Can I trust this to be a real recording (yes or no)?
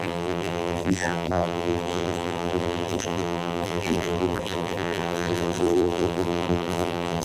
no